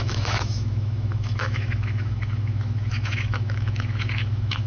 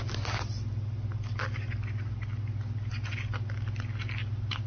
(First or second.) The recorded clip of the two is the second